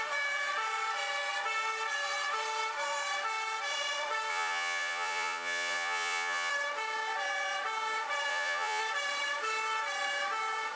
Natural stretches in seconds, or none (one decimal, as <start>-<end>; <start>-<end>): 0.0-4.3; 6.5-8.3; 8.8-10.8